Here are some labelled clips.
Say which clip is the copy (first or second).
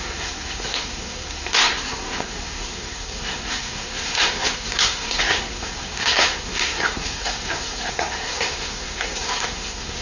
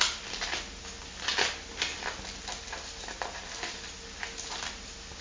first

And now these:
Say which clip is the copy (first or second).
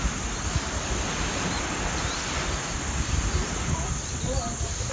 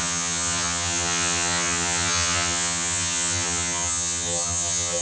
second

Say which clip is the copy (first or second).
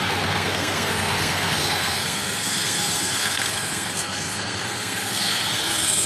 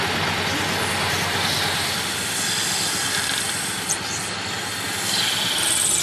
first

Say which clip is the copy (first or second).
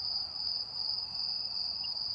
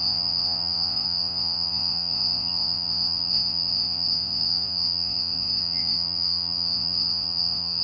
second